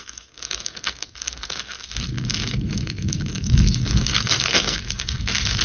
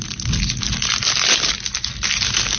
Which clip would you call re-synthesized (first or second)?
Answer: first